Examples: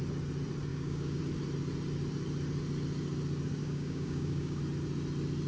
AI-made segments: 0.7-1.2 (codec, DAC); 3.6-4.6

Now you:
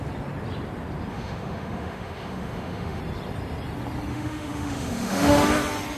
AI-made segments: 1.1-3.0 (autoencoder, DAC-VAE); 4.1-5.5

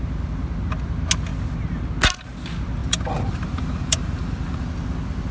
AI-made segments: 2.8-4.7 (vocoder, BigVGAN v2)

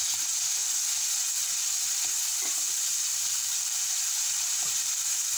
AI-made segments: 2.5-4.1 (vocoder, BigVGAN v2)

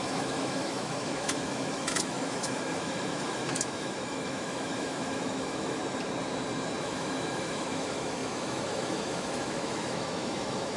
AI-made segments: 0.0-5.8 (autoencoder, DAC-VAE); 6.8-10.8

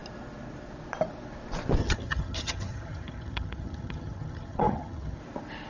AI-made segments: 1.8-5.2 (vocoder, HiFi-GAN)